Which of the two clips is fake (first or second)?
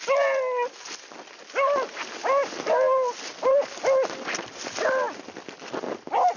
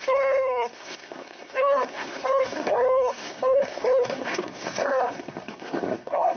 second